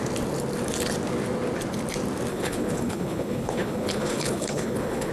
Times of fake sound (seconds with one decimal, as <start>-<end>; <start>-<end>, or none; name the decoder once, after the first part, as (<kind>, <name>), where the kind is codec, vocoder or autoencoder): 2.3-5.1 (codec, HILCodec)